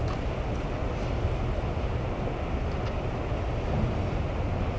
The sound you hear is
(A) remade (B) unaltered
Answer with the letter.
B